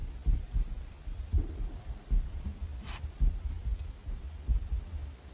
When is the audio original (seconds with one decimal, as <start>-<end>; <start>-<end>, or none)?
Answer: 1.4-4.0; 4.6-5.3